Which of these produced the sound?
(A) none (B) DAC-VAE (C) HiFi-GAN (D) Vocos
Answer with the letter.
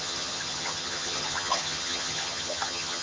C